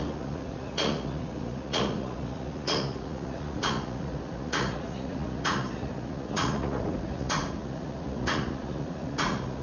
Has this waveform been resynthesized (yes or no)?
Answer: yes